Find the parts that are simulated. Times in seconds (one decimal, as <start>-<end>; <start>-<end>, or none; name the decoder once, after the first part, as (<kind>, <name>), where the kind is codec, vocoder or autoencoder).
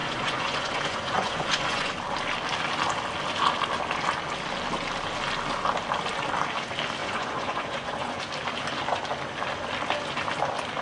0.0-1.9 (vocoder, Vocos); 7.0-8.2